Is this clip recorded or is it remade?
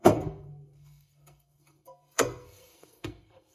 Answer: remade